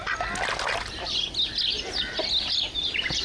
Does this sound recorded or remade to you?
recorded